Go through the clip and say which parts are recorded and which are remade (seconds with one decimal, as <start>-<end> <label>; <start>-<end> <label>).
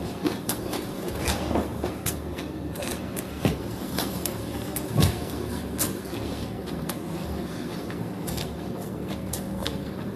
0.0-10.2 remade